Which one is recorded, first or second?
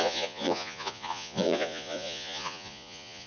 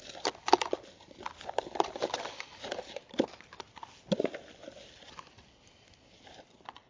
second